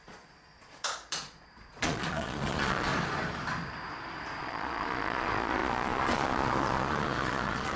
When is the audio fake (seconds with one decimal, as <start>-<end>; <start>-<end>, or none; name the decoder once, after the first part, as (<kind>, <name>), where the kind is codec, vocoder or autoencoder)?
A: 0.0-2.9 (vocoder, Vocos); 4.4-7.8